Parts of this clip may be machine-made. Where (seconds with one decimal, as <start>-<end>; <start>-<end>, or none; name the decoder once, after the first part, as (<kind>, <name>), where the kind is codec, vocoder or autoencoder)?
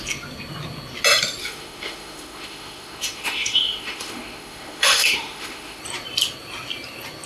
1.4-5.8 (autoencoder, DAC-VAE)